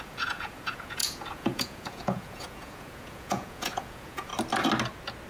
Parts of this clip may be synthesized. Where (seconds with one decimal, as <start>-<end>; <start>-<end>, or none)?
0.0-4.3